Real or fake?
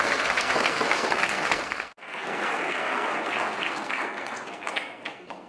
fake